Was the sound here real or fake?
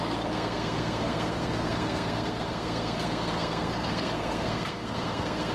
fake